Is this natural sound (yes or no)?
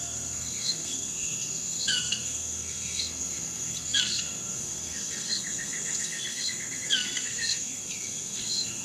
no